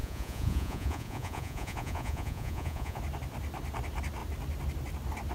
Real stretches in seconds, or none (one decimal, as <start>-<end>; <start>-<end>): 3.0-5.3